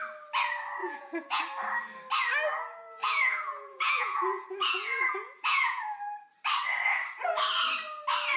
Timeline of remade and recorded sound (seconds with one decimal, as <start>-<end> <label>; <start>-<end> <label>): 0.0-0.8 recorded; 0.8-1.4 remade; 1.4-3.0 recorded; 3.0-5.8 remade; 5.8-8.4 recorded